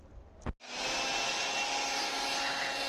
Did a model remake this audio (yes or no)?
no